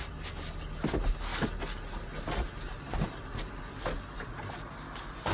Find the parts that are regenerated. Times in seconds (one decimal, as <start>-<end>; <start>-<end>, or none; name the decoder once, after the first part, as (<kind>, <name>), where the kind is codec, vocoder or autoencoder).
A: none